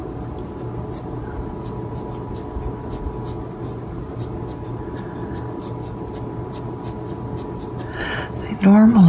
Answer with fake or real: real